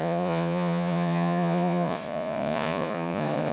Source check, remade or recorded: remade